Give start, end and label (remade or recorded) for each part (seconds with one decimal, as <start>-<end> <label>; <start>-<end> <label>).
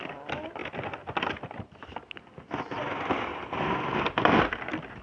0.0-5.0 recorded